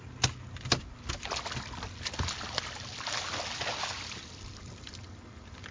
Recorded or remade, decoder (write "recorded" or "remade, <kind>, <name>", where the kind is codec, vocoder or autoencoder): recorded